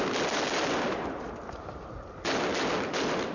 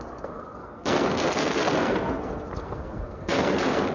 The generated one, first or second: second